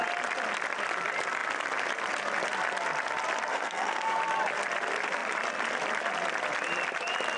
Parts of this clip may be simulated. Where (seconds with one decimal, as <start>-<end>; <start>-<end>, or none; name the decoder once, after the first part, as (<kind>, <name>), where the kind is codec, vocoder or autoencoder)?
3.5-4.2 (codec, SNAC)